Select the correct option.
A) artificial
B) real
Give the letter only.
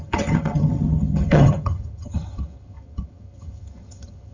A